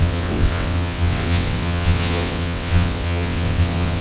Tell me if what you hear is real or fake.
fake